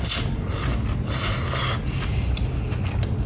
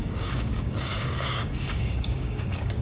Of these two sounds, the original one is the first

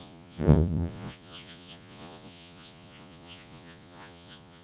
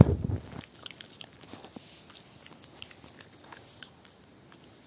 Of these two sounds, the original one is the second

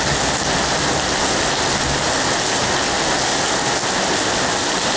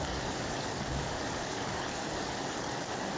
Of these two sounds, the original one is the first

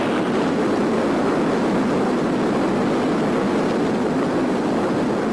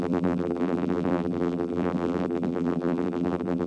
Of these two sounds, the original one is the first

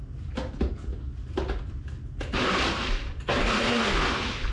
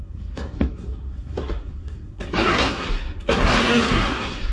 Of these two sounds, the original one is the first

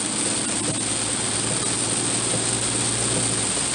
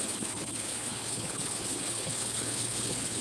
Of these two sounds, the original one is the first